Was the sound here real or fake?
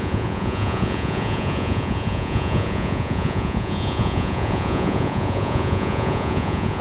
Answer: fake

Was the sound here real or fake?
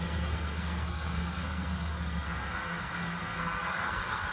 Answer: fake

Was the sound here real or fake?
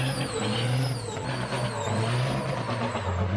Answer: real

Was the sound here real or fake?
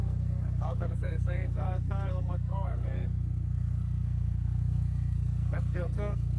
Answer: fake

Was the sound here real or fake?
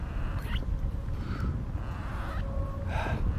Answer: real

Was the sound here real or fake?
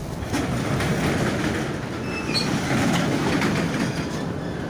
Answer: real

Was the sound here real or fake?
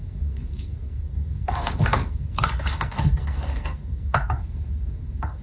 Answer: fake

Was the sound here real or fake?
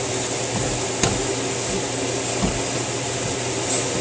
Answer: real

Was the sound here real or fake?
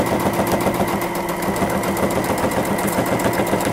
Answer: real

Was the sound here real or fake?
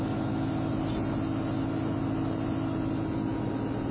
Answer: real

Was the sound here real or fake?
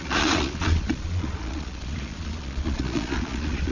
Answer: fake